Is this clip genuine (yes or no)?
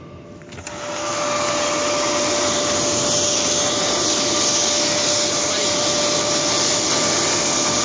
yes